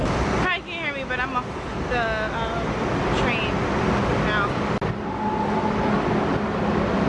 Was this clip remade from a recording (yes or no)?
no